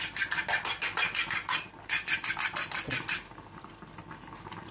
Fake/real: real